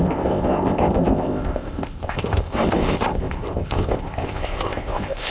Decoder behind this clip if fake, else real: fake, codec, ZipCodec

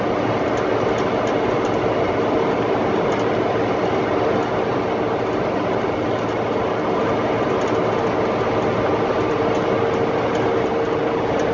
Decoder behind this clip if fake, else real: real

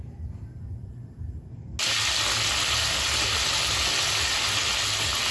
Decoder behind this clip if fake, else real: real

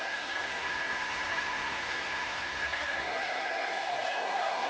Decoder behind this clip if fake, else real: fake, codec, SNAC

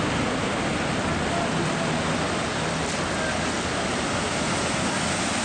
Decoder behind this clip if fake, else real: real